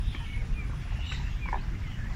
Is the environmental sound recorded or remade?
recorded